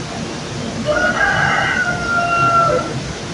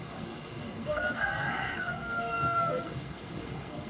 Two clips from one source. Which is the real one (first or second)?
first